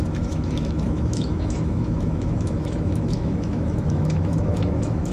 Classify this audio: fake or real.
fake